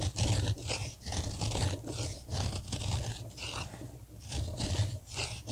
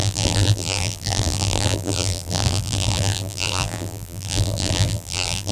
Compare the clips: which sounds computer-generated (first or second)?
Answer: second